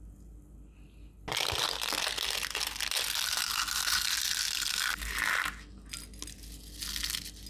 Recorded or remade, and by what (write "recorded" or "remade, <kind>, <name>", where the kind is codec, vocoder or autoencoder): recorded